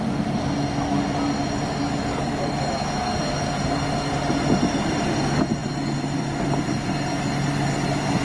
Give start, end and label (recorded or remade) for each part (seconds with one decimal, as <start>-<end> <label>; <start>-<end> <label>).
0.0-2.1 recorded; 2.1-2.6 remade; 2.6-8.2 recorded